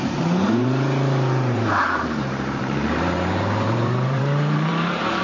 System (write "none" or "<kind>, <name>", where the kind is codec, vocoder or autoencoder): vocoder, BigVGAN v2